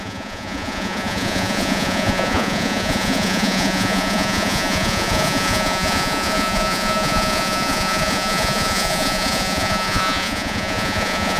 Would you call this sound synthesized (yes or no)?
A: yes